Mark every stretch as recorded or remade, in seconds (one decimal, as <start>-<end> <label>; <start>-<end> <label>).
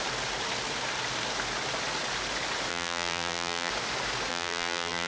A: 0.0-2.7 recorded; 2.7-3.7 remade; 3.7-4.3 recorded; 4.3-5.1 remade